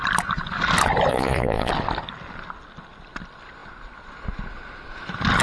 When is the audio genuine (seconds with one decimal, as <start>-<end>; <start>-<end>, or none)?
0.0-1.1; 1.7-5.4